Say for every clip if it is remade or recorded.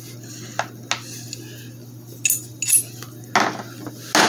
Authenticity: recorded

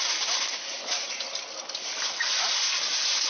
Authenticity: recorded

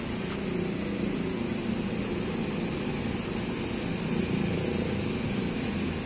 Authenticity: recorded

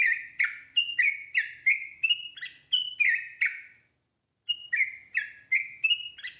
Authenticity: recorded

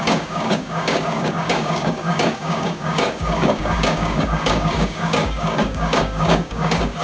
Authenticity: remade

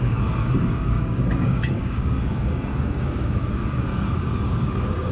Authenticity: remade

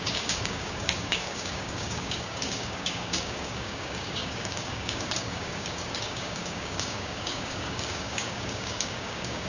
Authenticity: remade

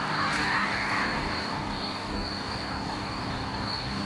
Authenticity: remade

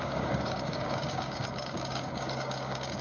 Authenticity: remade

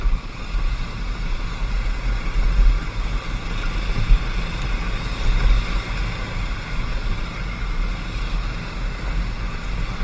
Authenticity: recorded